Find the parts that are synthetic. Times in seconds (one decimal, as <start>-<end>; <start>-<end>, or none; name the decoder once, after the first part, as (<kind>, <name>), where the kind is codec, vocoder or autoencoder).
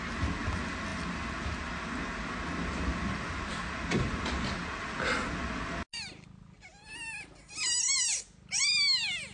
none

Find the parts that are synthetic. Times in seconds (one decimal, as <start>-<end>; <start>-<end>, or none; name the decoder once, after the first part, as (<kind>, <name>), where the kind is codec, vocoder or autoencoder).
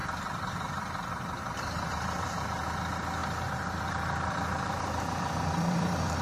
0.0-2.8 (vocoder, BigVGAN v2); 3.2-6.2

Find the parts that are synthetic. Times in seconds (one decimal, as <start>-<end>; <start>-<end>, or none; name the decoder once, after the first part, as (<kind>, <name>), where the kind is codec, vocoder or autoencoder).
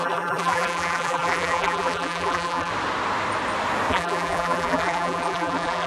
0.0-2.7 (vocoder, BigVGAN v2); 3.9-5.9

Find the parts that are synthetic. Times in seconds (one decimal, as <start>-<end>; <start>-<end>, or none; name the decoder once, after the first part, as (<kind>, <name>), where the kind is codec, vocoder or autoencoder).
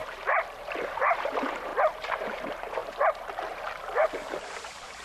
0.0-5.0 (vocoder, BigVGAN v2)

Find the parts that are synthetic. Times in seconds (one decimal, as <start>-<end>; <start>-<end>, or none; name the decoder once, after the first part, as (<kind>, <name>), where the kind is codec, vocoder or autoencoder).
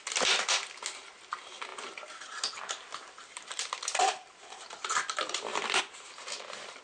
1.7-5.8 (vocoder, BigVGAN v2)